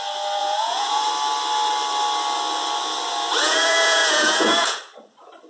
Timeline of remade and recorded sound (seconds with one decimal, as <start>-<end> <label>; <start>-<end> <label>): 0.0-0.4 recorded; 0.4-1.1 remade; 1.1-3.4 recorded; 3.4-4.8 remade; 4.8-5.5 recorded